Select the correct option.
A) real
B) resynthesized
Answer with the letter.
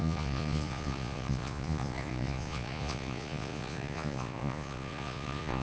B